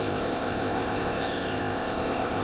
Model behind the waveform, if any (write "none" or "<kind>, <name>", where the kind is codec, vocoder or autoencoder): codec, ZipCodec